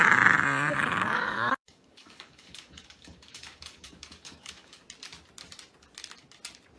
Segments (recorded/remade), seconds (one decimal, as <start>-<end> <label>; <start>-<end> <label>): 0.0-0.7 recorded; 0.7-4.8 remade; 4.8-6.8 recorded